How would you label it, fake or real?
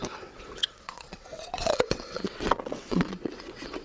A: fake